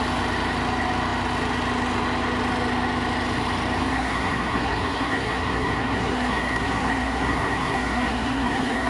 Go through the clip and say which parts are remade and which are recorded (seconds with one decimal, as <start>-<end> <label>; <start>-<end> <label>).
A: 0.0-3.9 recorded; 3.9-8.9 remade